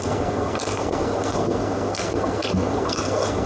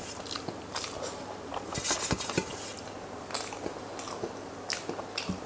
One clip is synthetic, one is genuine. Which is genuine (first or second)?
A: second